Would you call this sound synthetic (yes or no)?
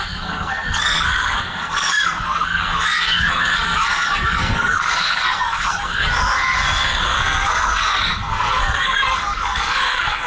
yes